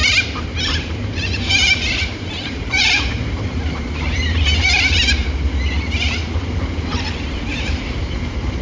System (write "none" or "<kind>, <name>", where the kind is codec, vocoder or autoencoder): vocoder, BigVGAN v2